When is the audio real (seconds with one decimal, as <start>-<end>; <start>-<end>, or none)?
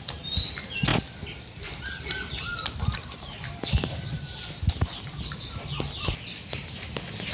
0.0-7.3